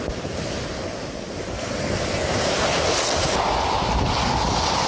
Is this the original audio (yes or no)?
yes